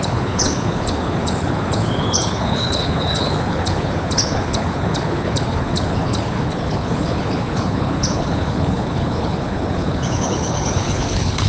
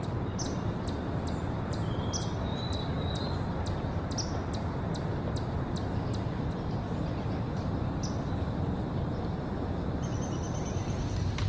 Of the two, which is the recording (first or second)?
second